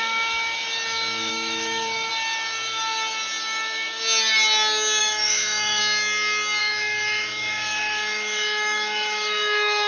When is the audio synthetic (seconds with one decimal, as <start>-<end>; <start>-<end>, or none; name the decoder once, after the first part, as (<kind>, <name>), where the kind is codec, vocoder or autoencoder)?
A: 1.3-2.1 (autoencoder, DAC-VAE); 5.0-5.8; 6.6-9.9